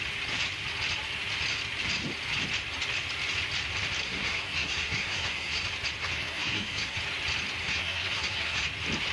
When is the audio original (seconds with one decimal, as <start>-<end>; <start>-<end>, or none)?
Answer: 0.0-4.0; 5.6-6.0; 7.0-7.6; 8.6-9.1